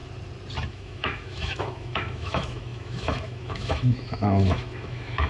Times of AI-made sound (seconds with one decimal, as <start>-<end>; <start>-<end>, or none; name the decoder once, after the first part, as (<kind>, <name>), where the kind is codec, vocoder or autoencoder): 0.7-5.3 (autoencoder, DAC-VAE)